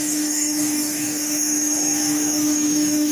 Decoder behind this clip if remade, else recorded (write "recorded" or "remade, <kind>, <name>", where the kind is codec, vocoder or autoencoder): remade, codec, DAC